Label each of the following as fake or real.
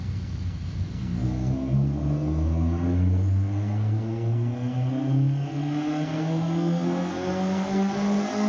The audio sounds fake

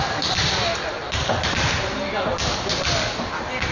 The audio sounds real